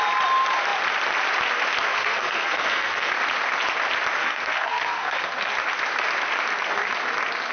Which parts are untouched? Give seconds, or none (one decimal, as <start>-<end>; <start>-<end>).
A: 0.0-1.9; 3.1-4.2; 5.5-7.5